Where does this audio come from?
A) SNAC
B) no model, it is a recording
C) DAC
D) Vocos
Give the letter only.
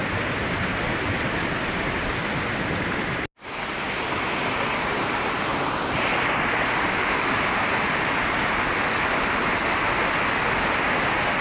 B